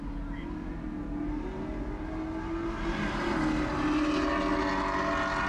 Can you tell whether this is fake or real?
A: real